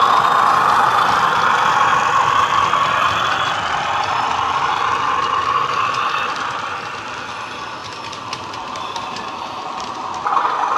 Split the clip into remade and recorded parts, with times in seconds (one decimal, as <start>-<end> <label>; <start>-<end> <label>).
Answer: 0.0-1.9 recorded; 1.9-2.9 remade; 2.9-5.4 recorded; 5.4-6.0 remade; 6.0-7.8 recorded; 7.8-10.3 remade; 10.3-10.8 recorded